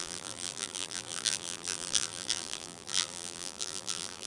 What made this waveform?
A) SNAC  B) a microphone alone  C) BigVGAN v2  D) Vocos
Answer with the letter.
C